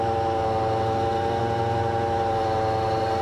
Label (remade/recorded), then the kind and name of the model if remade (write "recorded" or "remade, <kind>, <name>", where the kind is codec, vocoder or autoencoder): recorded